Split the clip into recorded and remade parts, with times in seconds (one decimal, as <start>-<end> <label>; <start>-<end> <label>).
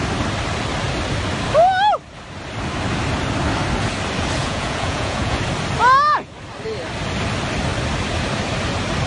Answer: 0.0-4.4 recorded; 4.4-5.4 remade; 5.4-9.1 recorded